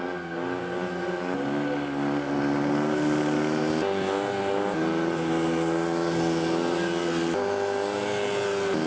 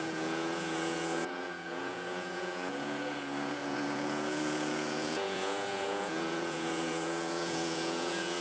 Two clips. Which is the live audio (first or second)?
first